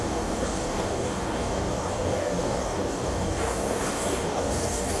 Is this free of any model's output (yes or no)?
no